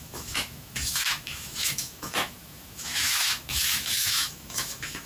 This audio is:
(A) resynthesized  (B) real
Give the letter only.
A